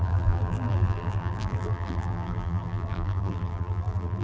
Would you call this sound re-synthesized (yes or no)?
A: yes